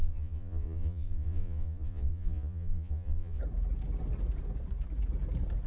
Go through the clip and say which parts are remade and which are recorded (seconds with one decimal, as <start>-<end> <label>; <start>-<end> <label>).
0.0-3.4 remade; 3.4-5.7 recorded